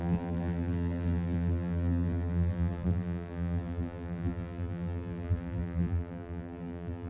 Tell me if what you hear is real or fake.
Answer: fake